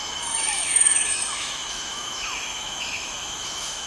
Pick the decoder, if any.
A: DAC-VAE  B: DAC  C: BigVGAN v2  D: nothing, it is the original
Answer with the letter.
A